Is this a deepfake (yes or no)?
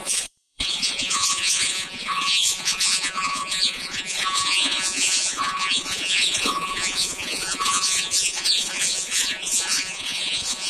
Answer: yes